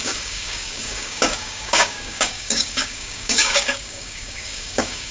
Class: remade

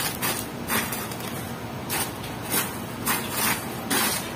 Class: recorded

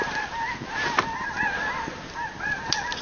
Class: recorded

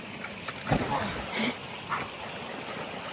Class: recorded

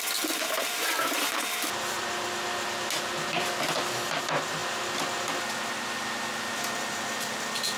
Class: recorded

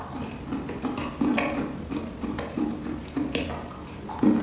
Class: recorded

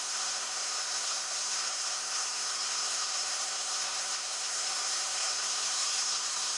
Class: remade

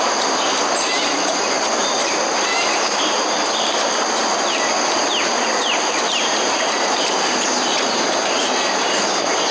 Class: remade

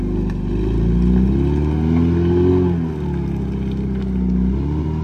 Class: recorded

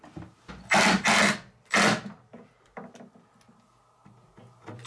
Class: recorded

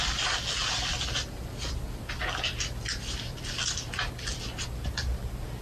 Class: recorded